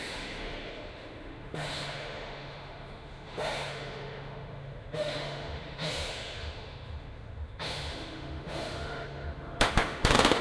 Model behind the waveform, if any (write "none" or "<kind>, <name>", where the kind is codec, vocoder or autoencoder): autoencoder, DAC-VAE